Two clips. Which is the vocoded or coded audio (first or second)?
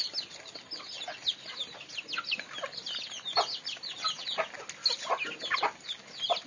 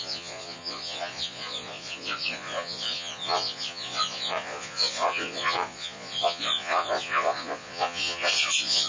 second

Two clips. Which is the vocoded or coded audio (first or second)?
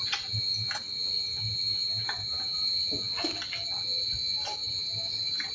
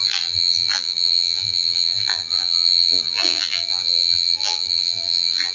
second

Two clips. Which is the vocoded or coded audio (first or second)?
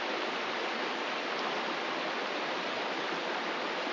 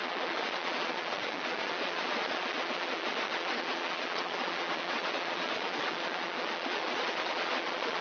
second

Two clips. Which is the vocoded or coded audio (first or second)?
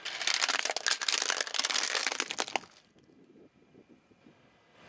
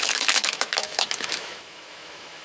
second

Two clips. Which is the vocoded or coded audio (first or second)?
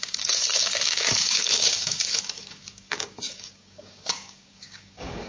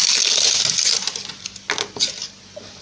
first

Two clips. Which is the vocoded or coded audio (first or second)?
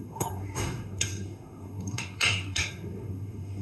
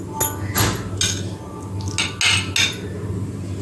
first